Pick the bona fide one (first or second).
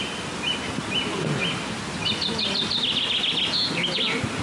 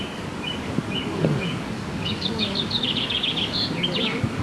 first